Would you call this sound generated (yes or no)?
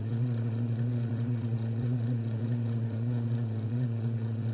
yes